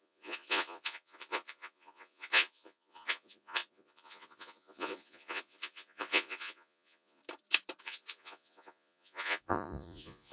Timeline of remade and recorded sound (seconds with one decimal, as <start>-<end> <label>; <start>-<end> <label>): 0.0-7.2 remade; 7.2-7.8 recorded; 7.8-10.3 remade